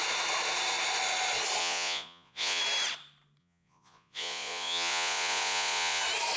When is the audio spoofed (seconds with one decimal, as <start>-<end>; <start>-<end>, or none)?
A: 1.6-2.6; 3.4-6.0

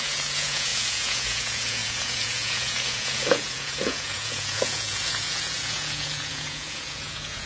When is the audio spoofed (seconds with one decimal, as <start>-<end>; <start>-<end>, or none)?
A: 0.0-7.5

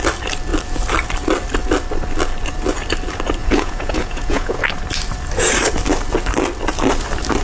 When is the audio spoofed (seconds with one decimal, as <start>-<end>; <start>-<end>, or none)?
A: 3.4-4.6